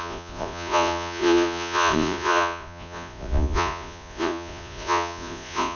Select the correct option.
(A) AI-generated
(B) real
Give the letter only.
A